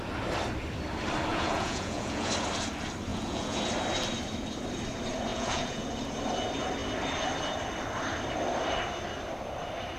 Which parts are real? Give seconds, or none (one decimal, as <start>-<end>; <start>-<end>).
0.0-1.3; 2.3-3.1; 3.6-5.3; 5.9-10.0